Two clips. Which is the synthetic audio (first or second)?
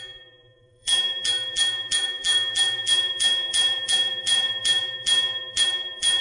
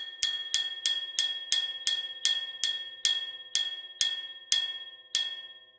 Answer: first